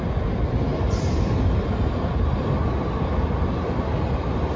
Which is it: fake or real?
real